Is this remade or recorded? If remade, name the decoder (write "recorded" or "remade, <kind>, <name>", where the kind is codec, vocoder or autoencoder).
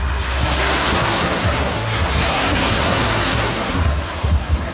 remade, codec, SNAC